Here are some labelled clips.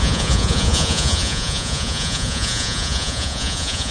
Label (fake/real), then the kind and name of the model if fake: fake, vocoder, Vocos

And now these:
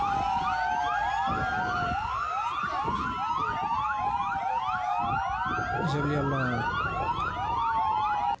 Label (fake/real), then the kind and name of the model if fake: real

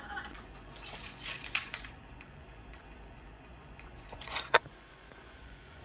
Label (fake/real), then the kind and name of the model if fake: fake, vocoder, Vocos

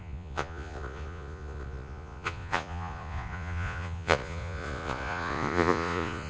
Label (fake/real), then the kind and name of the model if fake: fake, vocoder, Vocos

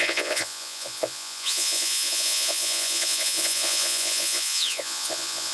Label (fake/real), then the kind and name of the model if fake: fake, vocoder, Vocos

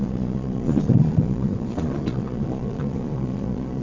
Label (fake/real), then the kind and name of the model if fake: fake, vocoder, Vocos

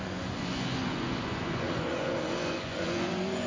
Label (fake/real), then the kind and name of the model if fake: fake, vocoder, Vocos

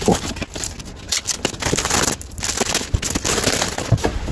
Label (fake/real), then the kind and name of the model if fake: real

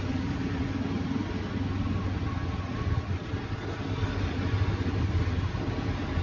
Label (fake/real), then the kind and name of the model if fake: real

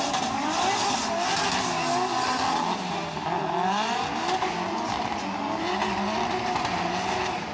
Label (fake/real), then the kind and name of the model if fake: real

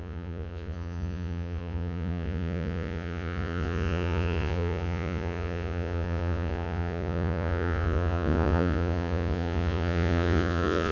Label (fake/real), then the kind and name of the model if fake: fake, vocoder, Vocos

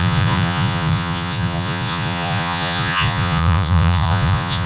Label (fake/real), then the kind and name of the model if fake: fake, vocoder, Vocos